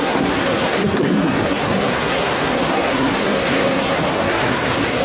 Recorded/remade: remade